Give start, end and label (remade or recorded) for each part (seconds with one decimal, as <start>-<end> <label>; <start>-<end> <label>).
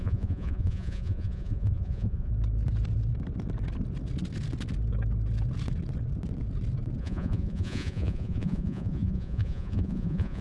0.0-2.3 remade; 2.3-7.0 recorded; 7.0-10.4 remade